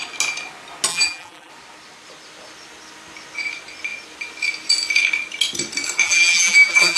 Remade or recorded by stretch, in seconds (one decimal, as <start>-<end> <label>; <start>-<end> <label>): 0.0-0.9 recorded; 0.9-1.5 remade; 1.5-6.0 recorded; 6.0-7.0 remade